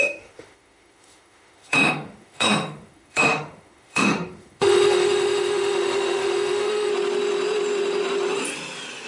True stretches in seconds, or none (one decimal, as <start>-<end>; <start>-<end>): 6.9-9.1